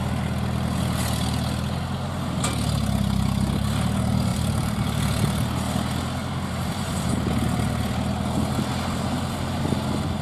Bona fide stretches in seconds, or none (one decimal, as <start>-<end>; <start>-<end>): 0.0-4.3; 5.0-10.2